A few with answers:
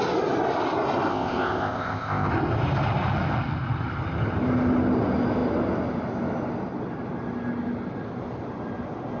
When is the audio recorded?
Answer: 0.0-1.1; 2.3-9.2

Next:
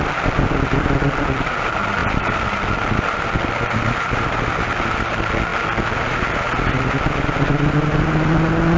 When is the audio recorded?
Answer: 0.0-2.0; 4.4-8.8

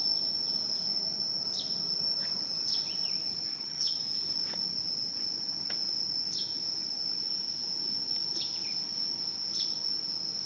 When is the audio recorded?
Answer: 0.0-3.5; 4.0-10.5

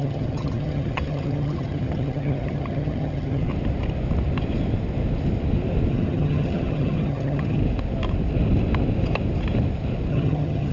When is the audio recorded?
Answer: 3.5-5.9; 7.6-10.1

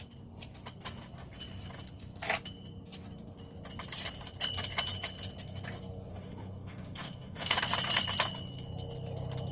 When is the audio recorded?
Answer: 0.0-6.1; 7.6-9.5

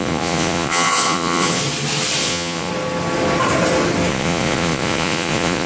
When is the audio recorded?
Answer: 1.6-2.2; 2.7-4.1